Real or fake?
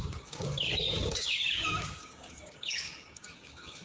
fake